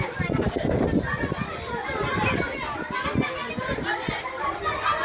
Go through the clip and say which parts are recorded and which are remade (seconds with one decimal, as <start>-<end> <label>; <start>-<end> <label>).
0.0-5.0 recorded